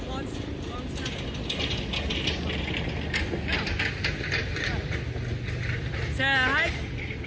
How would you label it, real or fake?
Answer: real